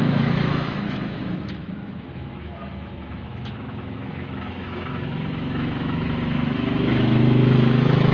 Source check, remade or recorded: remade